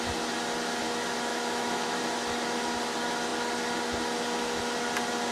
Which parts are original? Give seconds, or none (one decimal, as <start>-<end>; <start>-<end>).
0.0-1.3; 2.0-5.3